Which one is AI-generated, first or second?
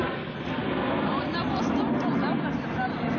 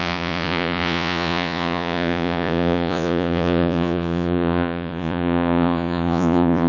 second